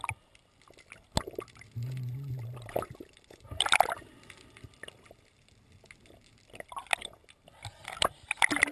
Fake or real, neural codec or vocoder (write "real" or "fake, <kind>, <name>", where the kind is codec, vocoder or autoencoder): real